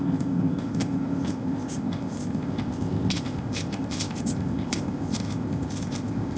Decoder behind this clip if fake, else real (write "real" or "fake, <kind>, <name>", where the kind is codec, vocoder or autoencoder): fake, codec, ZipCodec